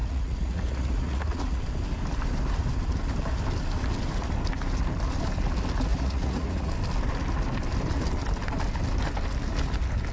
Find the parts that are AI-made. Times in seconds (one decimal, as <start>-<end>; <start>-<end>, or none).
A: 0.0-1.6; 5.9-6.7